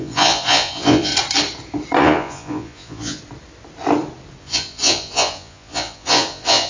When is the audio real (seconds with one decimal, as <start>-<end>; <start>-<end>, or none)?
1.1-2.0; 3.2-4.4